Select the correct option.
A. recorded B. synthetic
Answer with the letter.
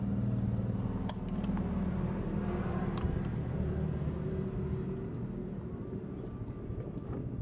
A